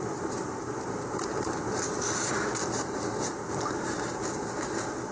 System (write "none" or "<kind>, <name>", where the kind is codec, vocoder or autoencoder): vocoder, BigVGAN v2